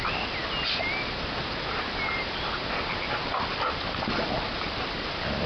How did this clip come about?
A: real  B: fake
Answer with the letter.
A